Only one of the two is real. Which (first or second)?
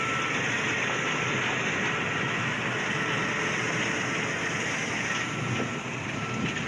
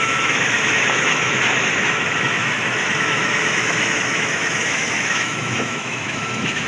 first